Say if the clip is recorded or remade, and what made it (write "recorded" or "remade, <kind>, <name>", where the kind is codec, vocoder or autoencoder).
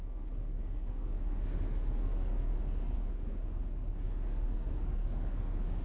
remade, codec, SNAC